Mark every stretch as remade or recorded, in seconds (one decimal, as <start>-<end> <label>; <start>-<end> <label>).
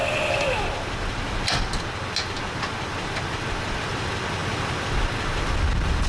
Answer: 0.0-6.1 recorded